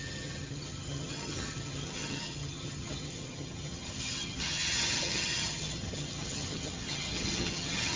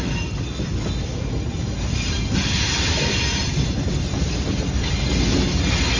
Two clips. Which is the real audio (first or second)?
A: second